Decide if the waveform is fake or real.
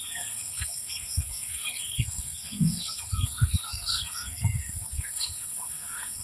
fake